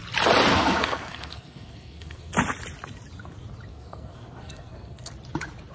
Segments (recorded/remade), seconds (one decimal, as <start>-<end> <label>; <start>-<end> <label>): 0.0-0.5 recorded; 0.5-2.3 remade; 2.3-3.7 recorded; 3.7-5.1 remade; 5.1-5.7 recorded